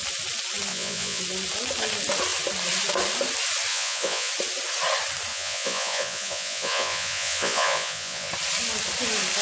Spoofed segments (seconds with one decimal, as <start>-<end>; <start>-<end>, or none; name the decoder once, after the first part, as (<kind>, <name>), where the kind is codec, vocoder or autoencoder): 0.7-1.2 (vocoder, Vocos); 3.7-4.3; 5.3-8.3